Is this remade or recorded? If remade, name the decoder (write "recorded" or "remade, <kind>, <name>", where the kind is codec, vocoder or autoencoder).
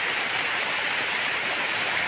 recorded